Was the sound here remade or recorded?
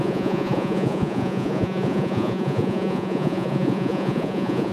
remade